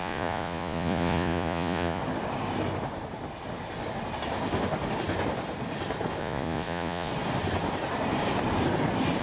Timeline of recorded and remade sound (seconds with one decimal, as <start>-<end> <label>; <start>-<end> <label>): 0.0-2.0 remade; 2.0-6.2 recorded; 6.2-7.1 remade; 7.1-9.2 recorded